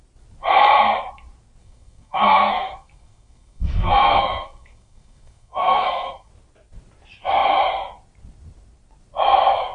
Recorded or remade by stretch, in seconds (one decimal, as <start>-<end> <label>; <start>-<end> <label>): 0.0-1.6 recorded; 1.6-6.3 remade; 6.3-9.7 recorded